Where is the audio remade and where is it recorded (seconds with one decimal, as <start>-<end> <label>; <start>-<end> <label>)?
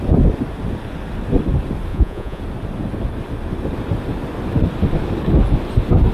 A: 0.0-1.9 recorded; 1.9-2.4 remade; 2.4-6.1 recorded